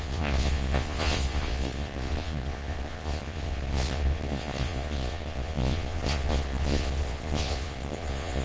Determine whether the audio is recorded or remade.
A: remade